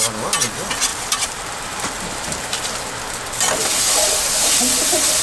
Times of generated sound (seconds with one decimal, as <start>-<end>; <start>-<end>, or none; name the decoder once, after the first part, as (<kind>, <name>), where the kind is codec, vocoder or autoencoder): 0.9-2.9 (vocoder, BigVGAN v2)